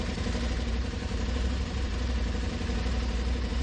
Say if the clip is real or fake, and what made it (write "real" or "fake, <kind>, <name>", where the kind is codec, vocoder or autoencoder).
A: fake, vocoder, BigVGAN v2